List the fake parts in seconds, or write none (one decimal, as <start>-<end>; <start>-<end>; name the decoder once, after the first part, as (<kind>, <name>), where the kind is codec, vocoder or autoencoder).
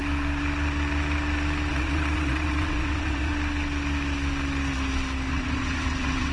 1.7-3.3 (vocoder, WaveNeXt); 5.3-6.3